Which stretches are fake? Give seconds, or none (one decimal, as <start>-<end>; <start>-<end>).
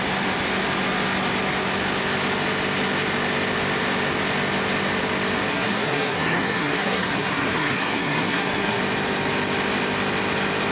5.5-8.8